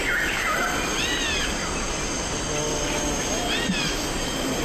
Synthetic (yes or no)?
no